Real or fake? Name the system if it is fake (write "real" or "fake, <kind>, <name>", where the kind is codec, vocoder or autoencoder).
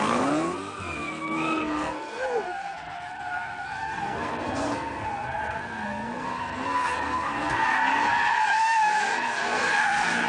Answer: fake, codec, SNAC